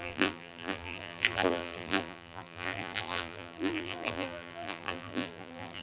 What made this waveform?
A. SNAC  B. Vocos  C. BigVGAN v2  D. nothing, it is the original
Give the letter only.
C